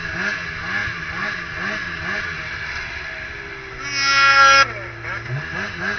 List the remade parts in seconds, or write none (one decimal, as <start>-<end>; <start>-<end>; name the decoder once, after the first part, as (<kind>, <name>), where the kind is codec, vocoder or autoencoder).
none